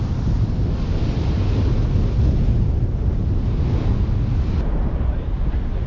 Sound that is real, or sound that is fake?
real